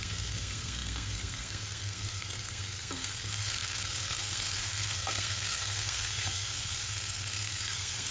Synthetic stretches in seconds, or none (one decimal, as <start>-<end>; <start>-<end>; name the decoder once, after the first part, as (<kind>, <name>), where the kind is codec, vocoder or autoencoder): 0.0-8.1 (codec, SNAC)